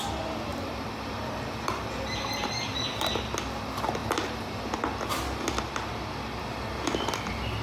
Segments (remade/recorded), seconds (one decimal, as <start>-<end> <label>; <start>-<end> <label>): 0.0-0.5 recorded; 0.5-2.8 remade; 2.8-4.0 recorded; 4.0-4.7 remade; 4.7-7.6 recorded

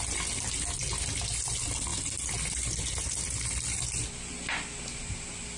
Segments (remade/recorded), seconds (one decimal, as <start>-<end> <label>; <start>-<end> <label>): 0.0-5.6 recorded

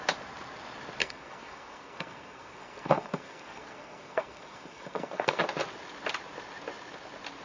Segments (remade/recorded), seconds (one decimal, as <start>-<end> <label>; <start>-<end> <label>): 0.0-1.0 recorded; 1.0-5.4 remade; 5.4-7.4 recorded